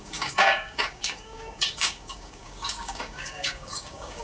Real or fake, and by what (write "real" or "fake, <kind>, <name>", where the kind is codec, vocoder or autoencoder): fake, codec, DAC